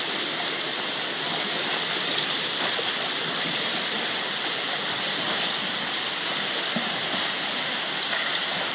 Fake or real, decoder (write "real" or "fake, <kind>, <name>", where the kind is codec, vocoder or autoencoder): fake, vocoder, BigVGAN v2